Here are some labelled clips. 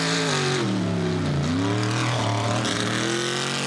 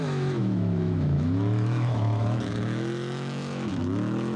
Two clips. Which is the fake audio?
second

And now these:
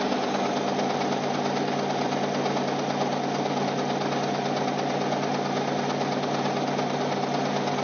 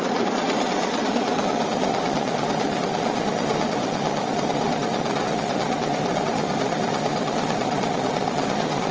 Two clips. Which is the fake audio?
second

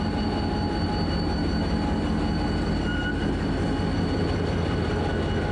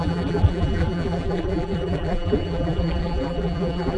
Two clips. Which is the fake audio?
second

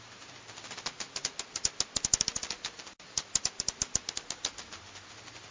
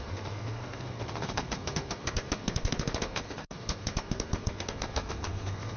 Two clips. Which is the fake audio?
second